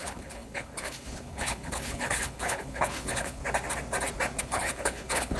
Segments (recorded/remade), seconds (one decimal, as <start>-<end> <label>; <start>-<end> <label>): 0.0-3.4 remade; 3.4-4.4 recorded; 4.4-5.4 remade